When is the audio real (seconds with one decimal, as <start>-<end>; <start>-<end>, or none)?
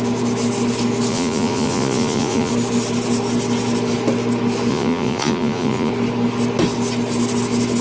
0.0-1.1; 2.5-4.7; 5.9-7.8